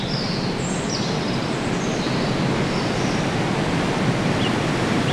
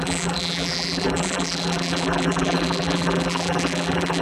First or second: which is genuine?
first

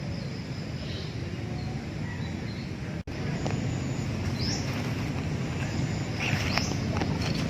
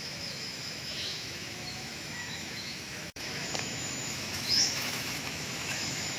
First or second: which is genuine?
first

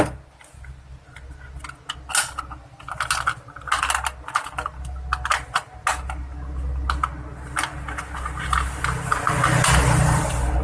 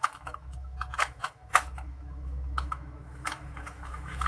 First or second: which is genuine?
first